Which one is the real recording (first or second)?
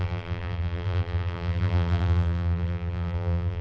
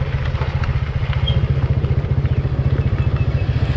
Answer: second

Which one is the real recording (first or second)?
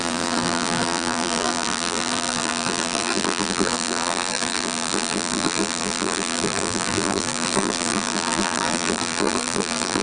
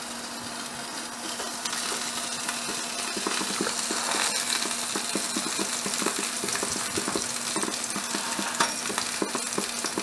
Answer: second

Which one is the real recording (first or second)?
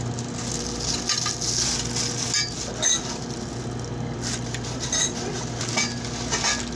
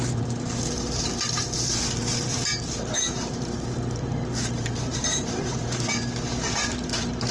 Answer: first